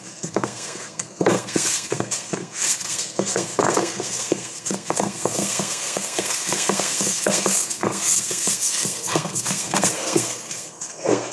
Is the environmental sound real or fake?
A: fake